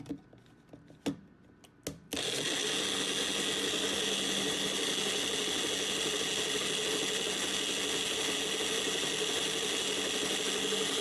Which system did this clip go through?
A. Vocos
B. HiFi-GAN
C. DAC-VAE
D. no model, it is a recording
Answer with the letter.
D